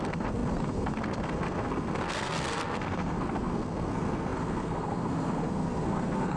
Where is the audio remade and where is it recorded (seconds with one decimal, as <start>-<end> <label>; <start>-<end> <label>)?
0.0-6.4 remade